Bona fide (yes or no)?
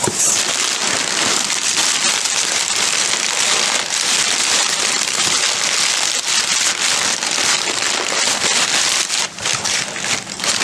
yes